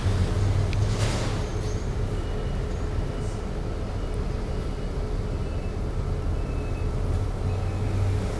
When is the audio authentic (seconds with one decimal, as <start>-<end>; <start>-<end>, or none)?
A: 0.0-8.4

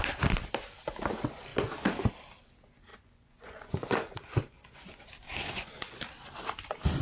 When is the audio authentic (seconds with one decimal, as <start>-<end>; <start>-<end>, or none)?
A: 0.0-2.9; 6.0-7.0

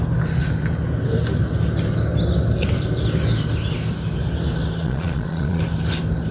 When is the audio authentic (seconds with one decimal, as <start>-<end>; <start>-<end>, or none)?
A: 0.0-4.8; 5.6-6.3

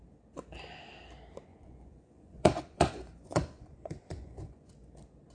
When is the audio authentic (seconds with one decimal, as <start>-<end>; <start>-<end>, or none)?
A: 0.0-1.5; 4.7-5.3

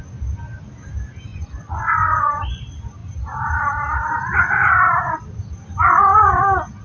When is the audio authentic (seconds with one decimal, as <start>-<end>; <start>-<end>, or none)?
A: 0.0-1.3; 2.6-6.8

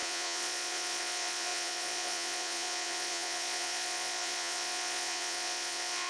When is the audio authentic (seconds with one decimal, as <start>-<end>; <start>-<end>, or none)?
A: none

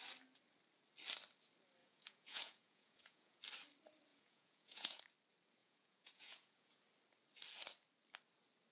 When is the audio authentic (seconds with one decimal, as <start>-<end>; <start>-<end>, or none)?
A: 0.0-1.8; 3.4-4.1; 5.0-5.6; 6.8-8.7

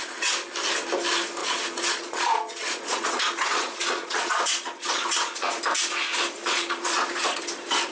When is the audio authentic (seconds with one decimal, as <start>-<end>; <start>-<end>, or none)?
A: 0.0-1.4; 5.6-6.4; 7.4-7.9